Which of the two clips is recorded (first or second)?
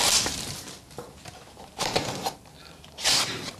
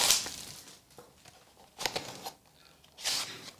second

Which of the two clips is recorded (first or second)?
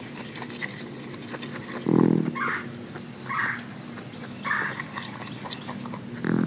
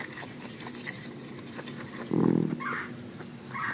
first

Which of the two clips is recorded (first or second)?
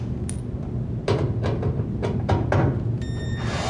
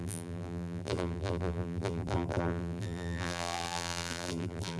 first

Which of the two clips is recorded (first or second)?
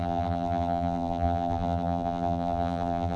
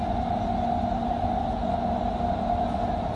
second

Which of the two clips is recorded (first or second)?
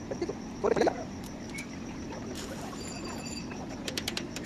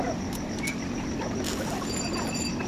second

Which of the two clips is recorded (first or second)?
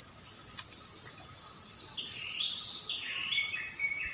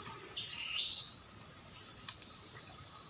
first